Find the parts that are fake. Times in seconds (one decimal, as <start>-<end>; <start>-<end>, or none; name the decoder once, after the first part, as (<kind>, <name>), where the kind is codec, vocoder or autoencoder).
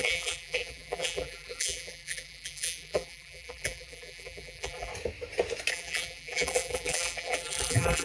0.0-4.9 (vocoder, BigVGAN v2); 5.7-8.0